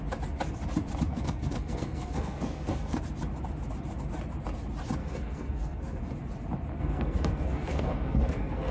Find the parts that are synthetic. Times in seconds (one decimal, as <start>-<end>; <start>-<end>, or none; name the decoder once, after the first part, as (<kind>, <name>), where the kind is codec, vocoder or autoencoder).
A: 1.1-3.0 (codec, SNAC); 5.0-6.0; 6.8-8.7